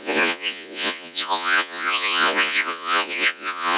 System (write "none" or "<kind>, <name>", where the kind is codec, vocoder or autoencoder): vocoder, Vocos